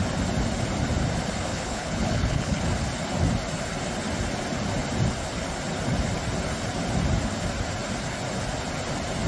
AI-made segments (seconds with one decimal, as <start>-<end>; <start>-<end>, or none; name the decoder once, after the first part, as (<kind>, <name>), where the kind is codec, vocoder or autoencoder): 1.5-2.6 (codec, HILCodec)